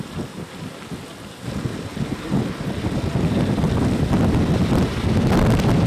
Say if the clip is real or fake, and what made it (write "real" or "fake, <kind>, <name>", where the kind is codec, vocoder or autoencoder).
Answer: real